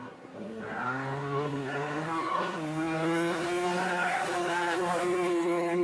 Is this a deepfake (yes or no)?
yes